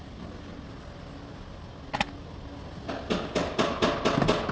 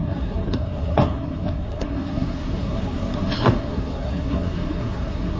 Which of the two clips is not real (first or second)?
second